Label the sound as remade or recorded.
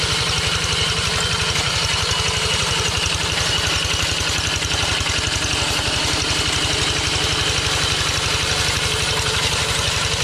recorded